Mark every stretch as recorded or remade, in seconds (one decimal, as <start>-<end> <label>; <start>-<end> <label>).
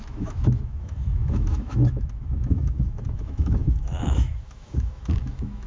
0.0-5.7 remade